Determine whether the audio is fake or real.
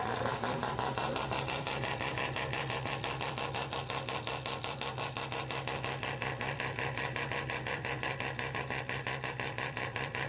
fake